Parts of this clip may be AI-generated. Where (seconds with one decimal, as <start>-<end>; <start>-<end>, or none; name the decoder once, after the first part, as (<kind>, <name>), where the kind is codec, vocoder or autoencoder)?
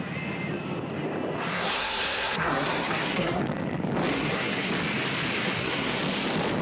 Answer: 1.5-3.4 (codec, SNAC); 4.1-4.7; 5.4-6.0